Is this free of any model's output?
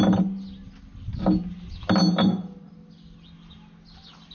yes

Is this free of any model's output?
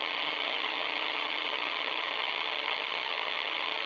no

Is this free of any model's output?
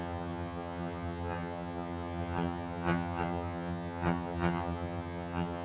no